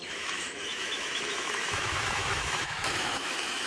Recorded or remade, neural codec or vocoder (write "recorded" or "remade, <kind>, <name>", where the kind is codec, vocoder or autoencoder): remade, autoencoder, DAC-VAE